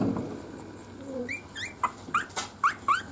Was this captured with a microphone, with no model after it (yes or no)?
yes